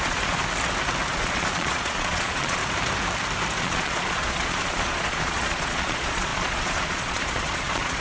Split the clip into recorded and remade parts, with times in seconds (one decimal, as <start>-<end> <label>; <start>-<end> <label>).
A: 0.0-0.4 remade; 0.4-1.1 recorded; 1.1-2.6 remade; 2.6-3.6 recorded; 3.6-8.0 remade